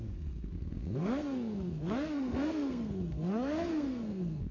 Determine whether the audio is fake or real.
fake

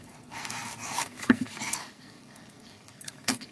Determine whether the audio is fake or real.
fake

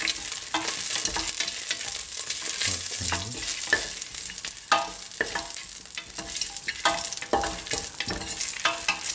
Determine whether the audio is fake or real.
real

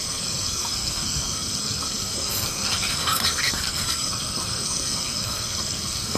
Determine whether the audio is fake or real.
fake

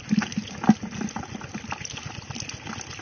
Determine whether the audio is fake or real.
real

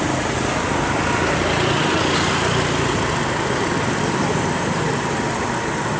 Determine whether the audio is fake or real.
real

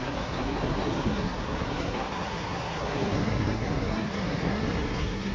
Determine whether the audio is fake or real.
fake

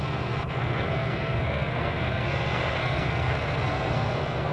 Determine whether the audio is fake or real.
fake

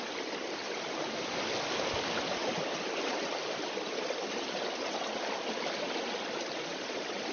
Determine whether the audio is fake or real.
real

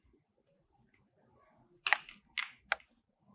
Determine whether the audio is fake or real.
real